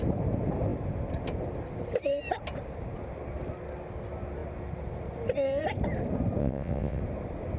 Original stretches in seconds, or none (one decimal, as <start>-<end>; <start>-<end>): 0.0-6.4; 7.0-7.6